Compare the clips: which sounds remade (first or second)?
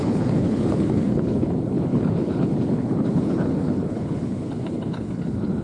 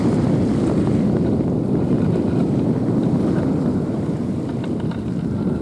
first